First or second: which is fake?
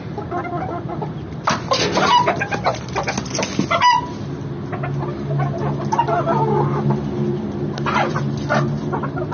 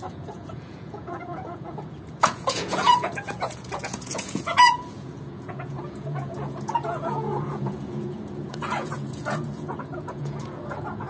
second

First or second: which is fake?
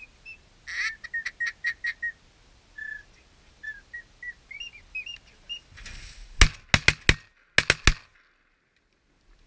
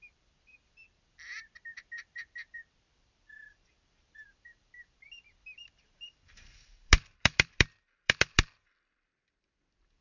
second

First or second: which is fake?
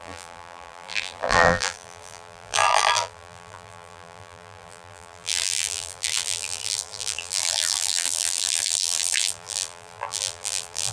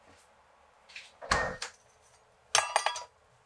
first